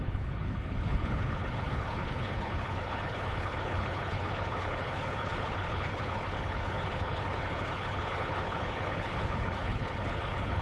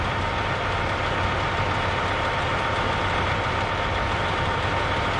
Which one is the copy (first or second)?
first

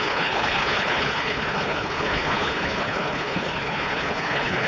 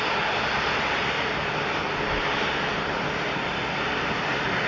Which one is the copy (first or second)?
first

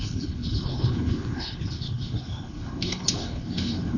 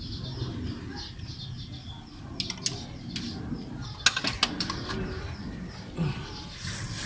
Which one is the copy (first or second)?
first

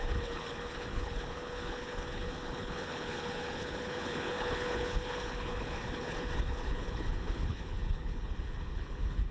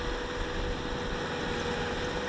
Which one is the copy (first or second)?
first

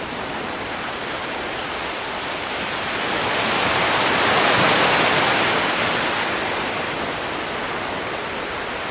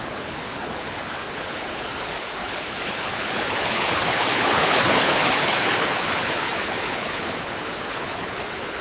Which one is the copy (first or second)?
second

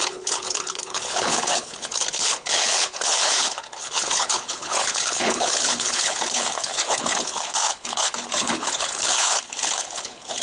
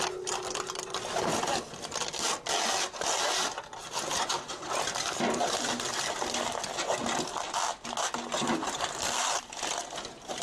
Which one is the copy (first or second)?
first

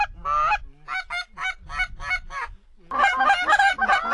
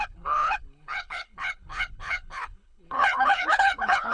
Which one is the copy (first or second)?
second